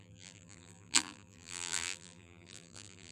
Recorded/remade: remade